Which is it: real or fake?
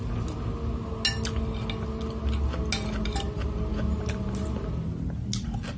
real